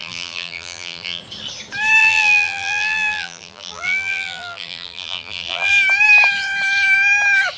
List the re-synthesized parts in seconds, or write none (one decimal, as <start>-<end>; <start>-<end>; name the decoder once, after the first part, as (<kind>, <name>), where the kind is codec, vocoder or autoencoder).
0.0-1.2 (vocoder, BigVGAN v2); 2.0-5.7